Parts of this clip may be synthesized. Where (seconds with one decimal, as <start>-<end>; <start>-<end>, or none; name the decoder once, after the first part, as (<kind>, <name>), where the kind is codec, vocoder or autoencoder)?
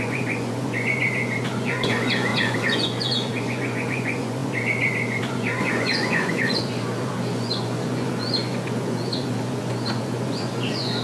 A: 0.0-11.0 (vocoder, Vocos)